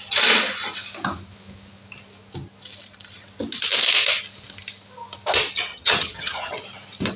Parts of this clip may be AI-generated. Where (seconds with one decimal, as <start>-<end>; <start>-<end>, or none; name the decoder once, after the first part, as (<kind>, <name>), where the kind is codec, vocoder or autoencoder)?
5.7-6.5 (vocoder, HiFi-GAN)